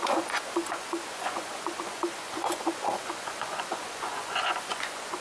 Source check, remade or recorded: remade